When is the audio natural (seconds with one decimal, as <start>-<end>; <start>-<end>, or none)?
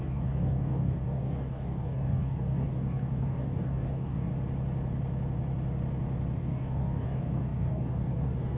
4.3-6.4